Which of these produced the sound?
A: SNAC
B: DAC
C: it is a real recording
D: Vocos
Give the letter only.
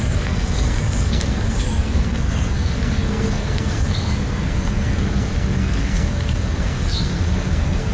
A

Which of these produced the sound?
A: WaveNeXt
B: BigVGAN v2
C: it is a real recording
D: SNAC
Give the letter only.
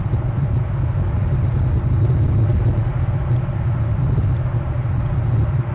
C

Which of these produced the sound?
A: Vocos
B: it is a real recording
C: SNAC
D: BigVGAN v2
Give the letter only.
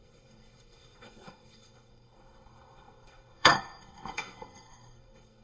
C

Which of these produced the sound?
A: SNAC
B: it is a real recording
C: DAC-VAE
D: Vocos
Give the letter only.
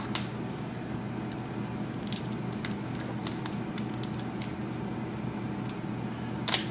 B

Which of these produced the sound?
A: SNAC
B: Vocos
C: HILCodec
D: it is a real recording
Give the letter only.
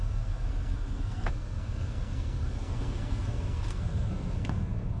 A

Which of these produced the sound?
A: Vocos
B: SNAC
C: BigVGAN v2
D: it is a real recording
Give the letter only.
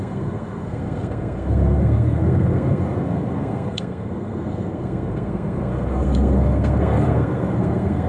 B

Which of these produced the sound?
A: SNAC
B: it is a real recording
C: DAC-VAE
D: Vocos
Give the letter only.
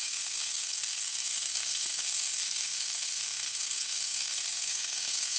A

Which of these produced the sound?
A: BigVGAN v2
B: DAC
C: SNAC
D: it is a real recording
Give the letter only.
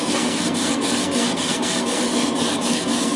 C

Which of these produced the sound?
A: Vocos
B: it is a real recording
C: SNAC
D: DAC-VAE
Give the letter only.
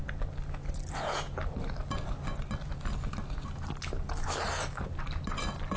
B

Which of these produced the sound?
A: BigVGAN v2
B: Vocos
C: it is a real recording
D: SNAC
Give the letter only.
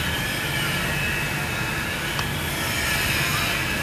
C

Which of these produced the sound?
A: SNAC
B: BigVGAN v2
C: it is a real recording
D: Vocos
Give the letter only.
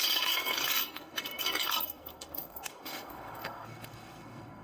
A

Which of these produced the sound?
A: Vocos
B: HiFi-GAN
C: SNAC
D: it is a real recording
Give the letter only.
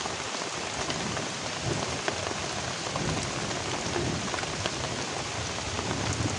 D